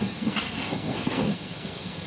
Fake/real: fake